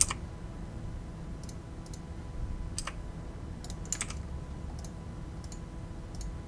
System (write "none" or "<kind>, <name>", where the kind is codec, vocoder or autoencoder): none